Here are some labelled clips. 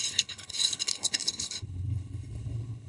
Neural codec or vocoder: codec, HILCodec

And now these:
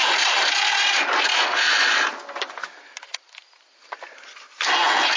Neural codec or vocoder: none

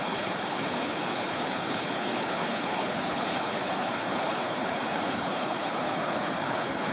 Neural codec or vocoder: codec, HILCodec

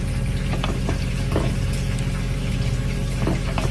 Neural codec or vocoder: none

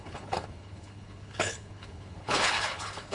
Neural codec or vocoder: codec, HILCodec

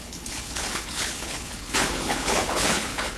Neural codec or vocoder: codec, HILCodec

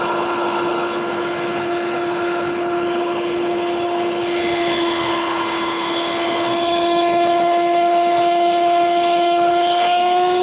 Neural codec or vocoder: codec, HILCodec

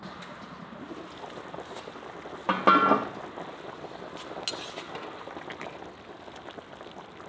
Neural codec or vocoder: none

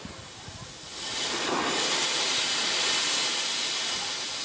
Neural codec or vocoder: none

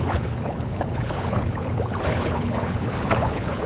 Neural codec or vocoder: codec, HILCodec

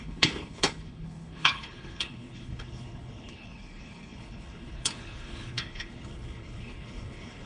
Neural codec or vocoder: codec, HILCodec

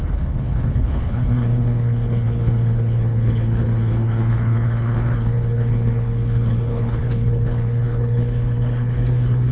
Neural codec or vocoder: codec, HILCodec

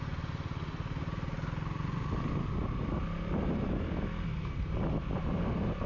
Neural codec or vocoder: none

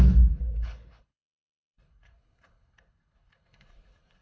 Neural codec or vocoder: codec, HILCodec